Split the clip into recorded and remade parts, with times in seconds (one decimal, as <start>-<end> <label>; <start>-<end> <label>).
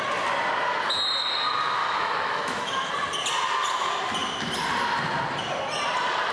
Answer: 0.0-1.8 recorded; 1.8-2.9 remade; 2.9-6.3 recorded